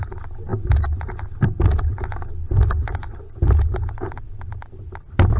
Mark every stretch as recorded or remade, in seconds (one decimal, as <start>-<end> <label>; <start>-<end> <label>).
0.0-5.4 recorded